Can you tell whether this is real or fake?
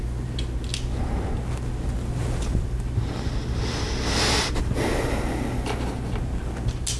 real